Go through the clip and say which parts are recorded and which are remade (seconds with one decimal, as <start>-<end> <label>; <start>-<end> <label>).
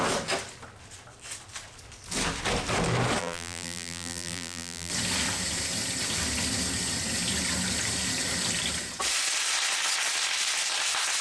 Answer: 0.0-3.2 recorded; 3.2-4.9 remade; 4.9-11.2 recorded